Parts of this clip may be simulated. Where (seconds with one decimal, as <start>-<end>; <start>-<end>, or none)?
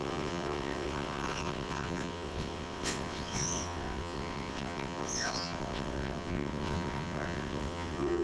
0.0-8.2